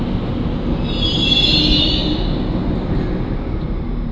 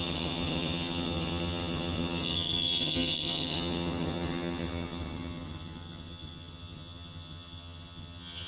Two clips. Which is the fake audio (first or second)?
second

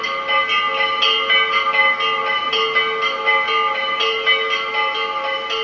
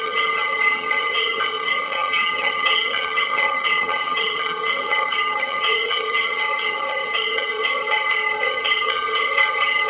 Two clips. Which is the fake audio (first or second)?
second